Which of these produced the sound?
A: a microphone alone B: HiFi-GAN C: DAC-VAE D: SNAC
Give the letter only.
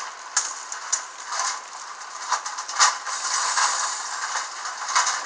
A